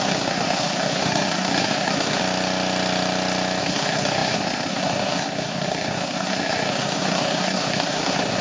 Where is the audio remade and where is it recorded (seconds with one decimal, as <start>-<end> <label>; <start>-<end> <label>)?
0.0-2.2 remade; 2.2-3.6 recorded; 3.6-8.4 remade